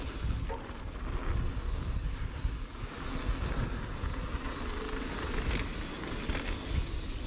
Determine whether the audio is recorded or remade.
recorded